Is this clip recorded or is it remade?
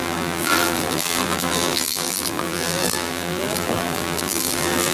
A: remade